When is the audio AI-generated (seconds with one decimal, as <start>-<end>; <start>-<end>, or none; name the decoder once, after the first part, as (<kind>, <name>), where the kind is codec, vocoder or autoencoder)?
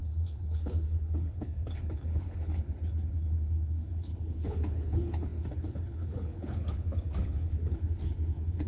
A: 0.0-8.7 (codec, HILCodec)